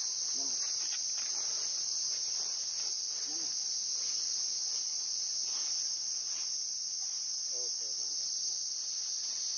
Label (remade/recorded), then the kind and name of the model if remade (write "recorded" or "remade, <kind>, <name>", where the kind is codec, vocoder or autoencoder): recorded